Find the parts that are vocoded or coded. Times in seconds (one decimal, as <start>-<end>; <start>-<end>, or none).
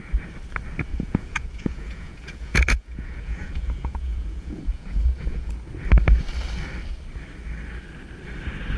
0.9-5.5